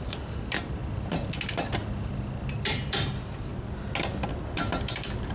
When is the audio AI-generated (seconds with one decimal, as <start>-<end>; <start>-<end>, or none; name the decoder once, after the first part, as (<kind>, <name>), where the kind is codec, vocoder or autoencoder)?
0.0-0.8 (vocoder, BigVGAN v2); 2.5-3.5